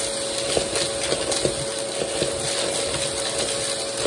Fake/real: real